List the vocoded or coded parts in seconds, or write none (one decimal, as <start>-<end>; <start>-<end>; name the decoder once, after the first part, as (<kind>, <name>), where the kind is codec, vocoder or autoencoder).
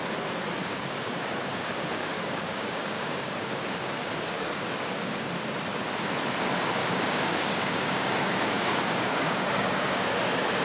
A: 0.6-5.3 (codec, DAC); 6.8-10.2